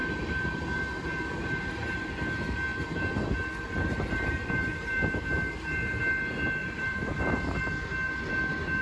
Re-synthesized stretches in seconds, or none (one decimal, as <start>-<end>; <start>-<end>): 0.0-2.1; 2.7-6.0; 6.6-7.6